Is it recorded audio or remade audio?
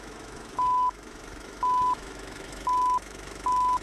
remade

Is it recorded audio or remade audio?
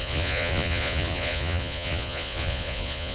remade